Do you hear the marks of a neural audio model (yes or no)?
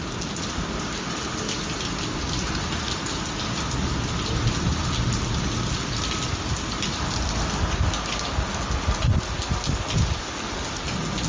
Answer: no